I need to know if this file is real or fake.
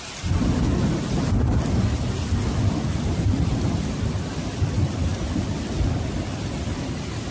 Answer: real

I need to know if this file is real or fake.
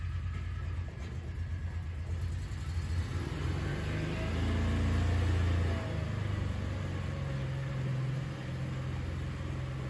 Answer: real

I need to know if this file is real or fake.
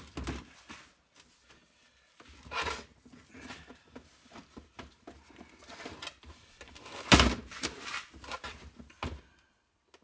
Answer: real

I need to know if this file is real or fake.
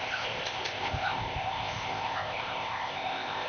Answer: fake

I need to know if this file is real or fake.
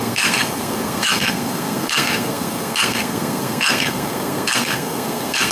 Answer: fake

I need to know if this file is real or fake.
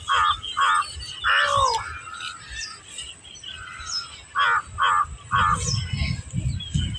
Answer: real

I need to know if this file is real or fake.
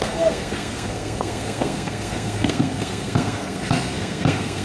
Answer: fake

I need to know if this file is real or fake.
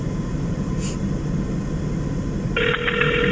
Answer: real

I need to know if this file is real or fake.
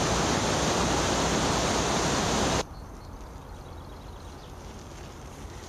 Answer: real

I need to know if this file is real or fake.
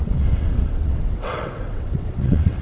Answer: fake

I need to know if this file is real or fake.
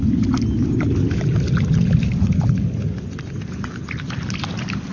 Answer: real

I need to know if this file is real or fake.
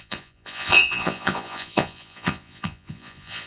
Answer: fake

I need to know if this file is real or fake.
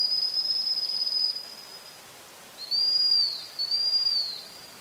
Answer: real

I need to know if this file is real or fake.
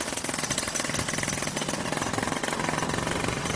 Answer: real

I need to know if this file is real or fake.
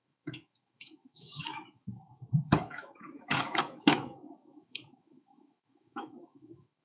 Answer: fake